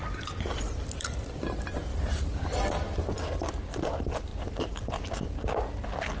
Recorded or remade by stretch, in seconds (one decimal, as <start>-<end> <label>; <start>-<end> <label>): 0.0-6.2 recorded